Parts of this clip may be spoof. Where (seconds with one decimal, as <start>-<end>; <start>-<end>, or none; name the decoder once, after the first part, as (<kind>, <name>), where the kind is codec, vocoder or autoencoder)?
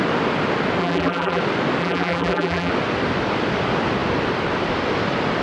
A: 0.8-1.4 (vocoder, BigVGAN v2); 1.8-2.7